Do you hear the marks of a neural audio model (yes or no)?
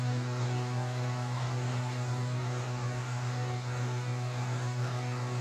yes